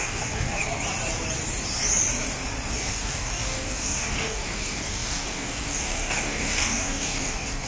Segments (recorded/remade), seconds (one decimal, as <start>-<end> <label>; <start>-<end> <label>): 0.0-0.6 remade; 0.6-2.7 recorded; 2.7-7.7 remade